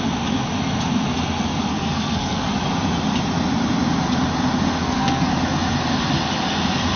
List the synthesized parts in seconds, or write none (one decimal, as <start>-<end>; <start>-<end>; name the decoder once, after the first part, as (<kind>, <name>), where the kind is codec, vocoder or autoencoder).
1.7-2.5 (codec, SNAC); 4.8-5.3